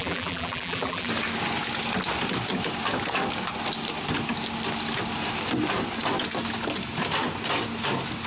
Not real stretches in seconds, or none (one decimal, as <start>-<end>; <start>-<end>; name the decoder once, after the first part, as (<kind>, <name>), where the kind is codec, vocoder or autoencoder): 0.0-1.1 (vocoder, BigVGAN v2)